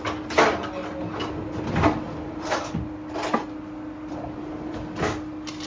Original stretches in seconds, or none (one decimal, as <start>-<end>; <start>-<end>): 0.0-5.7

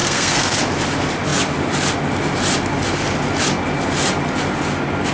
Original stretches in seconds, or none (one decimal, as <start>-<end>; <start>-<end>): 0.6-5.1